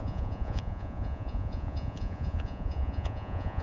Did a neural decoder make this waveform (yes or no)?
yes